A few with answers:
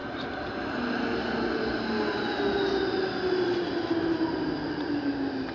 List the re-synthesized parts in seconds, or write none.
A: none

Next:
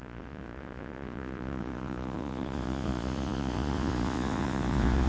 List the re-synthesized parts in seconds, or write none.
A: 0.0-5.1 (vocoder, Vocos)

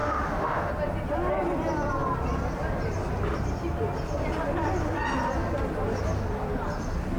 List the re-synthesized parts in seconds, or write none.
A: 0.0-0.7 (autoencoder, DAC-VAE)

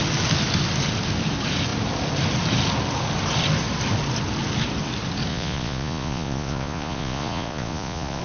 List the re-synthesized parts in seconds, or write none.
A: 5.3-8.2 (vocoder, Vocos)

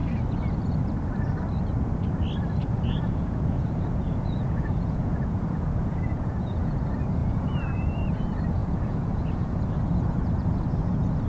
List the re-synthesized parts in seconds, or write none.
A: 2.6-6.8 (vocoder, Vocos); 7.2-8.2; 8.6-9.6

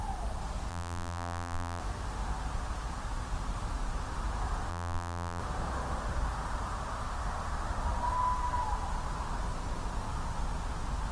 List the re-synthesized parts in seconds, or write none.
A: 0.7-1.8 (vocoder, BigVGAN v2); 4.7-5.4

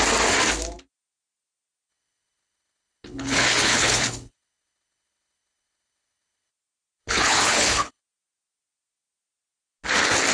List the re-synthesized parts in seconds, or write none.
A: 1.9-6.5 (codec, HILCodec); 7.0-8.0